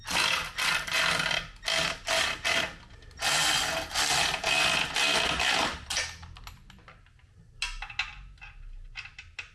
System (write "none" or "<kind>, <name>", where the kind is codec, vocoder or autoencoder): none